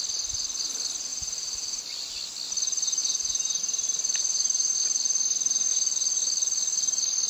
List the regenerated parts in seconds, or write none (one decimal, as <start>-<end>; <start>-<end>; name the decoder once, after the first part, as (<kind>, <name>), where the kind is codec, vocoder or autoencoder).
1.1-1.8 (vocoder, BigVGAN v2); 3.0-3.6